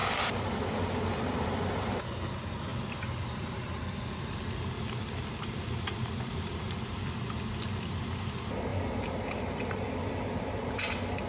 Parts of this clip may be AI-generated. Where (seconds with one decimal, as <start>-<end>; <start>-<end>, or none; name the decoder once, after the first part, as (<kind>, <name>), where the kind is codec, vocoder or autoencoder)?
0.0-0.7 (vocoder, BigVGAN v2); 2.7-7.1; 8.7-9.6